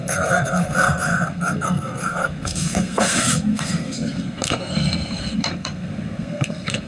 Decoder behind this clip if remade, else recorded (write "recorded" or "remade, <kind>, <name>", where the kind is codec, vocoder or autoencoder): remade, codec, SNAC